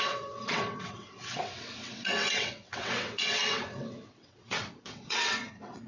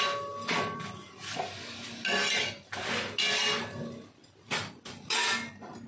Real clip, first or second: second